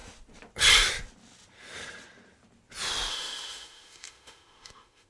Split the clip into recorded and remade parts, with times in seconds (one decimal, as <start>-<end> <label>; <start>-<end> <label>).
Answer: 0.0-3.1 recorded; 3.1-5.1 remade